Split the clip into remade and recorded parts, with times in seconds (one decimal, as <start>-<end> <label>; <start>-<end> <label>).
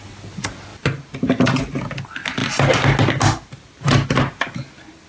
0.0-5.1 recorded